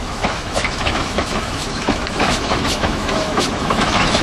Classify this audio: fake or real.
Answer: fake